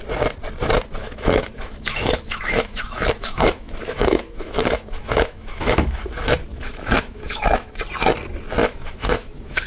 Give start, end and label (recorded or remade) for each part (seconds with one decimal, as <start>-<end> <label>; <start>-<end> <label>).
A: 0.0-1.0 recorded; 1.0-6.0 remade; 6.0-6.5 recorded; 6.5-7.8 remade; 7.8-8.6 recorded; 8.6-9.7 remade